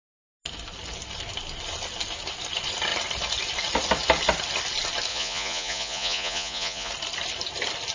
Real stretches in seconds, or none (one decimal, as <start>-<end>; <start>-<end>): 0.0-5.1; 6.9-7.9